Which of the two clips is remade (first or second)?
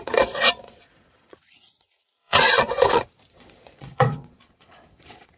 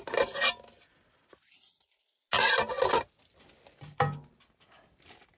first